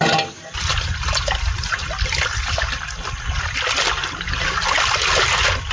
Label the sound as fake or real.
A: real